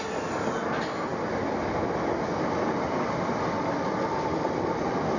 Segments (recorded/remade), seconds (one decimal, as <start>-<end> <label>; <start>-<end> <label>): 0.0-1.1 remade; 1.1-3.6 recorded; 3.6-5.2 remade